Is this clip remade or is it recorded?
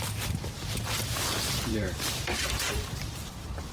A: remade